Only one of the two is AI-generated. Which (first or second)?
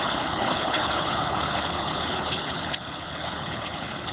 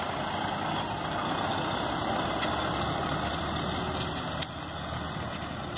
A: first